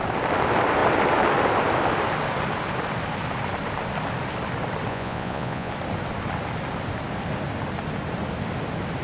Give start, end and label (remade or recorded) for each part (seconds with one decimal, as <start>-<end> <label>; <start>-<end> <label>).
0.0-4.9 recorded; 4.9-5.7 remade; 5.7-9.0 recorded